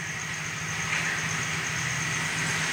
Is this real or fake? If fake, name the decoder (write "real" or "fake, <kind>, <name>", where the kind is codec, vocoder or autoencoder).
real